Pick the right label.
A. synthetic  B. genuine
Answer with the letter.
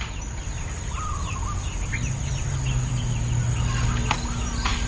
B